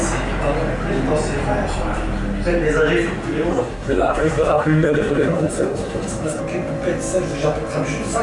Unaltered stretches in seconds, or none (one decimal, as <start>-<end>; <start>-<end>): 0.0-3.5; 6.4-8.2